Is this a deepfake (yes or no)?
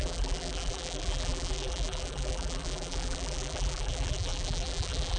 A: yes